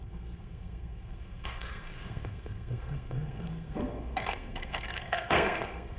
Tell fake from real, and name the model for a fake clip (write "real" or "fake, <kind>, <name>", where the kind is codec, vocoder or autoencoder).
fake, codec, SNAC